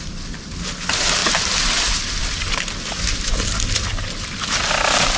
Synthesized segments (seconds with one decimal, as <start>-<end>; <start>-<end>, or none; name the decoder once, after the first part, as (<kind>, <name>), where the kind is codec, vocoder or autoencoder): none